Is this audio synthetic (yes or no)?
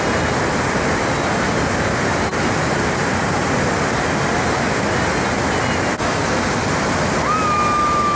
no